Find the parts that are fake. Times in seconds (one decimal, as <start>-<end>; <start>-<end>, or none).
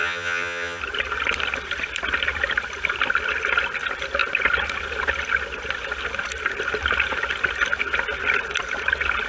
0.0-0.8